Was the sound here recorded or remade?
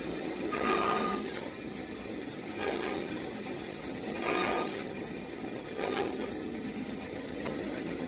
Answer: remade